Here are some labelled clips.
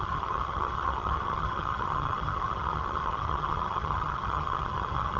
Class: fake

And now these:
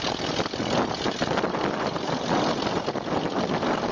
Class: real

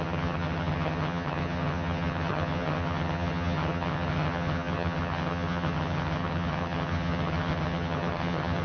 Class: fake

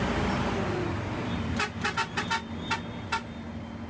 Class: real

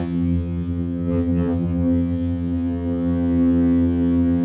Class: fake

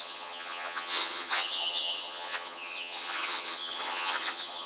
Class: fake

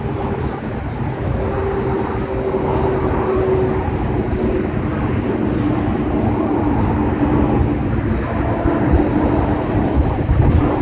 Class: real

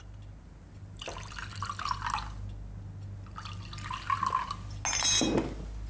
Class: real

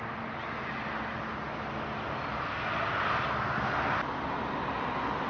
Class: real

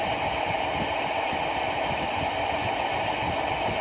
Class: real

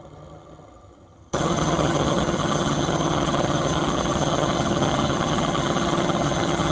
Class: fake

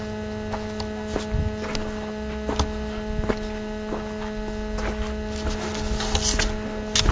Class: real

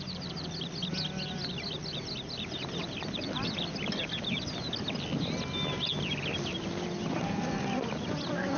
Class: real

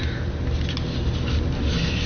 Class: real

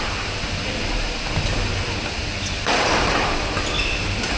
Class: real